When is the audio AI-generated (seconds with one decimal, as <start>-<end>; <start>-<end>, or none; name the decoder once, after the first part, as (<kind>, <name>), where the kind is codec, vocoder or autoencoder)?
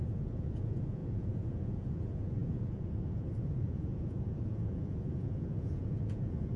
0.0-6.6 (vocoder, Vocos)